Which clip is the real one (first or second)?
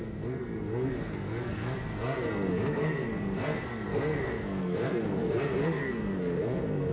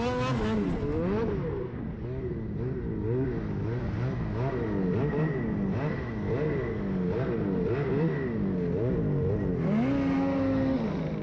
second